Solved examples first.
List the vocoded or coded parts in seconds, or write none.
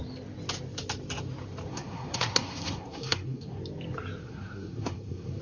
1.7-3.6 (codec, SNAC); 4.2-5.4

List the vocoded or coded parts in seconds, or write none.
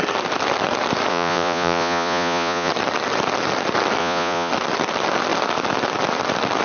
1.1-2.7 (vocoder, Vocos); 4.0-4.5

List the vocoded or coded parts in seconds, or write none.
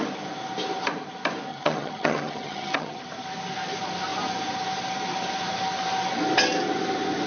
1.5-3.0 (vocoder, HiFi-GAN)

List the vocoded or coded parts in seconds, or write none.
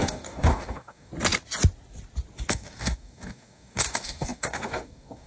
0.0-1.1 (codec, DAC); 2.5-5.3